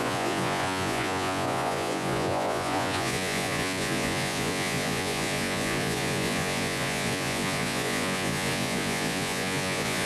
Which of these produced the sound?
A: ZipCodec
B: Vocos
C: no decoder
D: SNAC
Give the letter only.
B